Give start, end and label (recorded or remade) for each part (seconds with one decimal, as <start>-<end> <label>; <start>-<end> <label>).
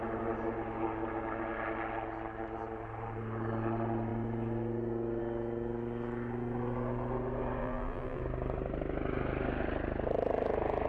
0.0-7.6 recorded; 7.6-8.2 remade; 8.2-10.9 recorded